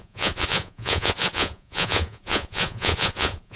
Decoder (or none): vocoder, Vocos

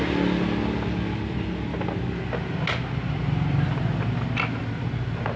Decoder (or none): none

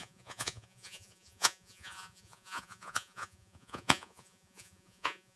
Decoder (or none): vocoder, Vocos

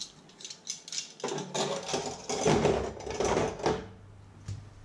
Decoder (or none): none